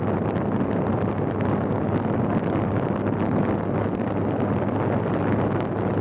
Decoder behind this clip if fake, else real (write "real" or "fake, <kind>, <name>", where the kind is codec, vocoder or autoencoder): real